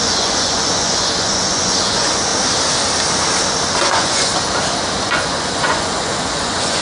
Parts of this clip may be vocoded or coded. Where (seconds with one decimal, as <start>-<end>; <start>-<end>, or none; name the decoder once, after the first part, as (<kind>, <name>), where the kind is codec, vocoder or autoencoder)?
0.0-2.3 (vocoder, Vocos); 3.8-4.3; 5.0-6.8